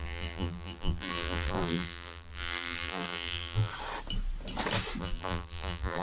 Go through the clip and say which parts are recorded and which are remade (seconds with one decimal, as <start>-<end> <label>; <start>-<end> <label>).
0.0-3.7 remade; 3.7-5.0 recorded; 5.0-6.0 remade